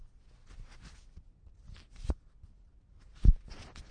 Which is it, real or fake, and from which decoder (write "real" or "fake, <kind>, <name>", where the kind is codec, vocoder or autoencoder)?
real